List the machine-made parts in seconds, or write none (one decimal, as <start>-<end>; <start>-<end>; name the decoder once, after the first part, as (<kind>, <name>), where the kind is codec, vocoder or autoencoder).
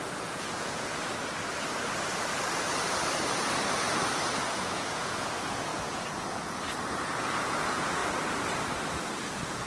0.0-0.9 (vocoder, Vocos); 4.5-8.0; 9.2-9.7